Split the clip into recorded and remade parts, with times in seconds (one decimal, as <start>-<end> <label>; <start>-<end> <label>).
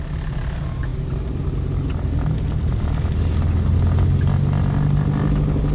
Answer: 0.0-5.7 recorded